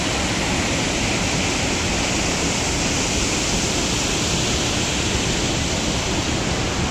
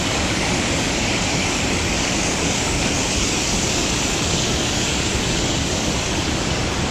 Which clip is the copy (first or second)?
second